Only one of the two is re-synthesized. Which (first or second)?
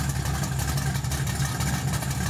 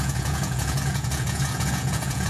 second